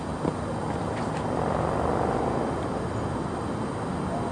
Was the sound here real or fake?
real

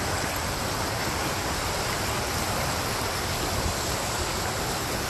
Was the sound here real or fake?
real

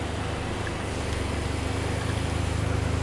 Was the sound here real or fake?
real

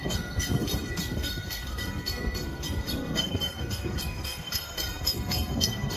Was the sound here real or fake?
fake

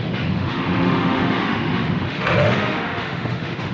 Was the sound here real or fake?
fake